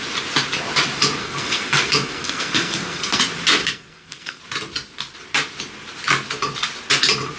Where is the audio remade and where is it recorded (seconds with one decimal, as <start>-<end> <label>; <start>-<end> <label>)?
0.0-1.2 recorded; 1.2-3.2 remade; 3.2-3.6 recorded; 3.6-4.4 remade; 4.4-7.4 recorded